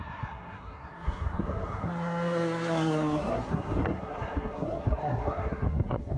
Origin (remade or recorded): remade